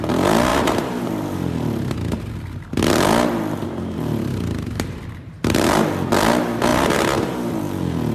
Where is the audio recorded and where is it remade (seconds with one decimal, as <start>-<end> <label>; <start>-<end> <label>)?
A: 0.0-0.5 recorded; 0.5-2.2 remade; 2.2-3.6 recorded; 3.6-5.0 remade; 5.0-6.7 recorded; 6.7-7.6 remade; 7.6-8.1 recorded